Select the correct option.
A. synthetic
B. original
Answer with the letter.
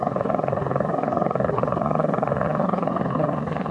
A